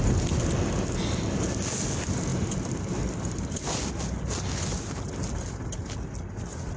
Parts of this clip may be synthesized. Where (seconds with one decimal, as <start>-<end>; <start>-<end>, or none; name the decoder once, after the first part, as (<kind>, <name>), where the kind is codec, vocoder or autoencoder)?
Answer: none